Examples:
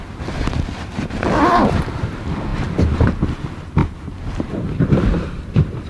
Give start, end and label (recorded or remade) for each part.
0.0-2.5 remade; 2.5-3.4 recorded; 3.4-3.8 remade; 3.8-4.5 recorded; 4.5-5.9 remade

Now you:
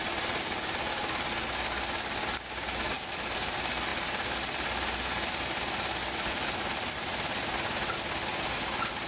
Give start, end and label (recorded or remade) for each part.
0.0-9.1 recorded

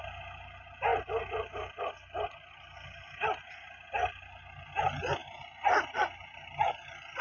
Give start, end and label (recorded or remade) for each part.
0.0-7.2 recorded

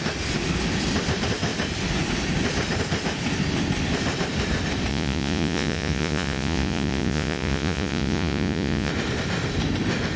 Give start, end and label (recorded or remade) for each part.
0.0-4.9 recorded; 4.9-8.9 remade; 8.9-10.2 recorded

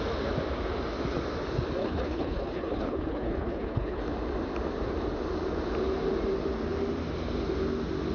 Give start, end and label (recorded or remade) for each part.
0.0-1.8 recorded; 1.8-4.0 remade; 4.0-8.1 recorded